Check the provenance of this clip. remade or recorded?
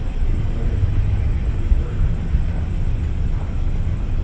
recorded